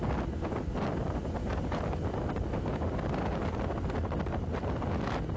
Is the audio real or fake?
real